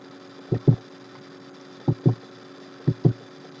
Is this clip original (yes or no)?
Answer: yes